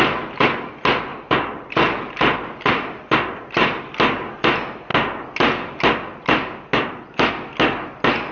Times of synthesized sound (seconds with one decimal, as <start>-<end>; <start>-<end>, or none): none